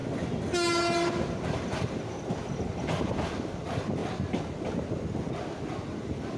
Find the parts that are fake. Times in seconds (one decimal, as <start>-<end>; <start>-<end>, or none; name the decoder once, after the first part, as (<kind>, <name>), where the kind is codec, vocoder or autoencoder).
1.1-4.0 (vocoder, BigVGAN v2); 4.9-6.4